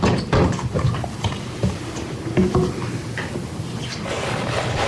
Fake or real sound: real